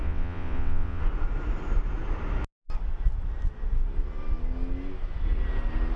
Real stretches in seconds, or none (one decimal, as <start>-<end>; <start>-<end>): 1.0-6.0